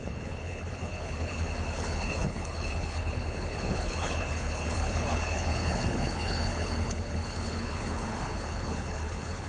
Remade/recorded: remade